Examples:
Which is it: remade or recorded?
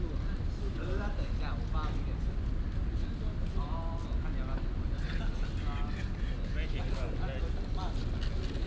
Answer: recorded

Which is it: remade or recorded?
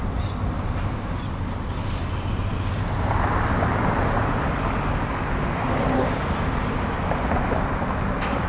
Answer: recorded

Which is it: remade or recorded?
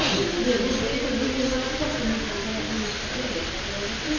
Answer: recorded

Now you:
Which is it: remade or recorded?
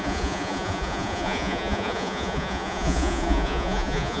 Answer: remade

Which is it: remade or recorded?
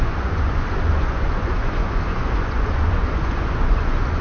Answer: remade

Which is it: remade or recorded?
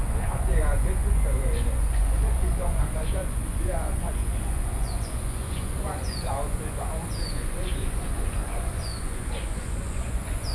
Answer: remade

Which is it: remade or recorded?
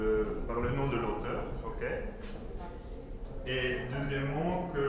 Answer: recorded